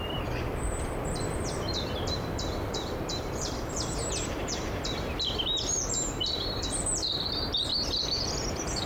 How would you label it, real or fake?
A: fake